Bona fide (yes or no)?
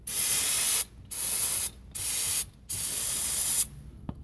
yes